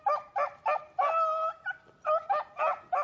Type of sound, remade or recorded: recorded